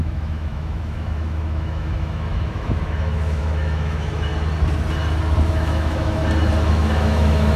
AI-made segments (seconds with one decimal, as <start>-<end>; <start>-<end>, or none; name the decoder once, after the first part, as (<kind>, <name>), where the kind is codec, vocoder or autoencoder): 0.0-4.3 (autoencoder, DAC-VAE); 5.5-6.2; 6.7-7.6